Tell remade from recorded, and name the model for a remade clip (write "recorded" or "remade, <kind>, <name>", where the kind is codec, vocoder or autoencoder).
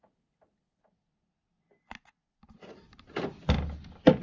recorded